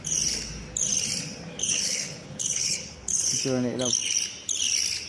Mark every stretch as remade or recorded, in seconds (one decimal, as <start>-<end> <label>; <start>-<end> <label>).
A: 0.0-1.6 recorded; 1.6-3.4 remade; 3.4-5.1 recorded

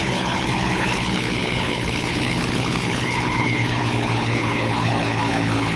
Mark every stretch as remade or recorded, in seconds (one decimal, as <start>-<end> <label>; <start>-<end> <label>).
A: 0.0-5.8 remade

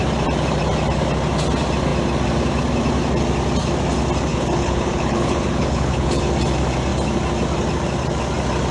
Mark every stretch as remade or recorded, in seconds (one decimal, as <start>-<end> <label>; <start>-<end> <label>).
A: 0.0-4.3 recorded; 4.3-6.2 remade; 6.2-8.7 recorded

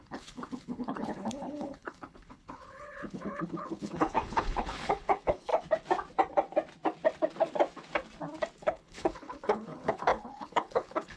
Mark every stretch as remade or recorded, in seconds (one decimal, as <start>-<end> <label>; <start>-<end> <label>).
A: 0.0-5.5 remade; 5.5-8.6 recorded; 8.6-11.2 remade

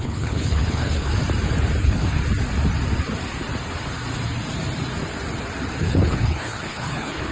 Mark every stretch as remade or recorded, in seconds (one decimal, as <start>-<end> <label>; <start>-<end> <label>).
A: 0.0-1.1 remade; 1.1-1.8 recorded; 1.8-2.2 remade; 2.2-5.8 recorded; 5.8-7.3 remade

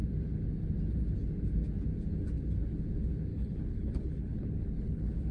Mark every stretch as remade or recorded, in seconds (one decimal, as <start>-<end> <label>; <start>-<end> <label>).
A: 0.0-3.3 recorded; 3.3-5.3 remade